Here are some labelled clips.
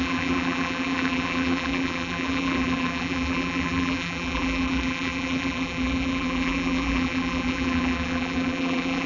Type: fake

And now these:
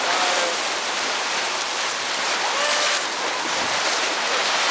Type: real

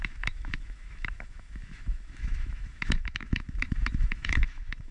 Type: fake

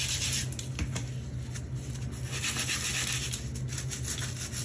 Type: real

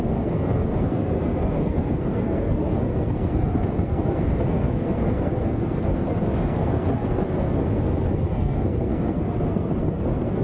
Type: fake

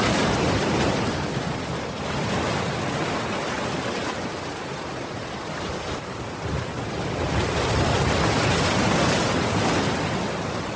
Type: real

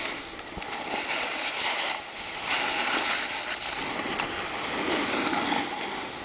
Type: real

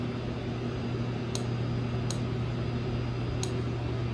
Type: real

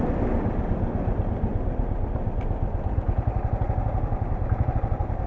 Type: real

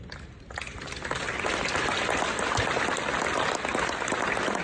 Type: real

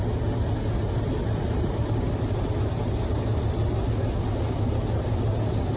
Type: real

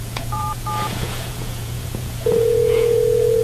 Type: fake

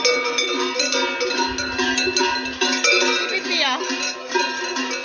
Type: real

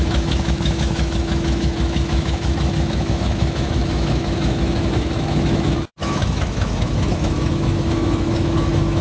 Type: fake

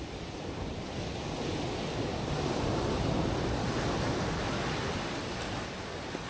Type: real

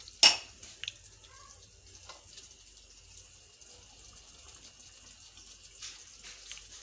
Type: real